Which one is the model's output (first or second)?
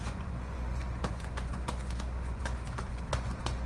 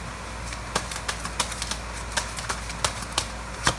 first